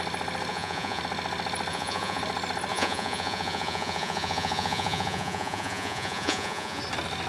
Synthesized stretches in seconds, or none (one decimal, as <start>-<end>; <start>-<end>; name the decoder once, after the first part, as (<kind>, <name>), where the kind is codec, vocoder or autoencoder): 0.5-1.0 (vocoder, Vocos); 1.7-2.2; 2.7-6.8